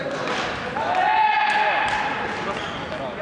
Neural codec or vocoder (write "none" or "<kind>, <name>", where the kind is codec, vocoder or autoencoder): none